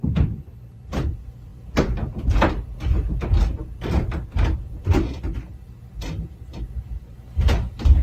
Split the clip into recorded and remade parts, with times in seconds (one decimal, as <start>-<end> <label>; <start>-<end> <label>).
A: 0.0-8.0 recorded